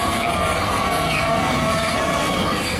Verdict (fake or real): fake